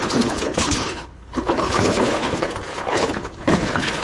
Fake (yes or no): yes